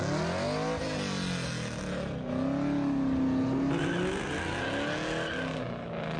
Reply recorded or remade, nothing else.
recorded